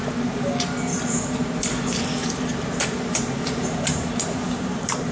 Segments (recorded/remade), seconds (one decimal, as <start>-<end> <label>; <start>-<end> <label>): 0.0-0.9 recorded; 0.9-1.6 remade; 1.6-2.2 recorded; 2.2-5.1 remade